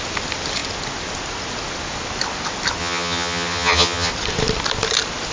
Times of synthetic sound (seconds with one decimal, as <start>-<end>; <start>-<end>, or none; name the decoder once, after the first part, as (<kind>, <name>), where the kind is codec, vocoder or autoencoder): 2.8-4.1 (vocoder, HiFi-GAN)